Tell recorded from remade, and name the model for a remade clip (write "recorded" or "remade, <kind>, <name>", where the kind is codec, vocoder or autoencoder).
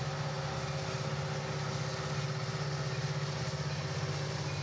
recorded